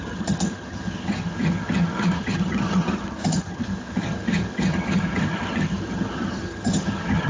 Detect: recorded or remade remade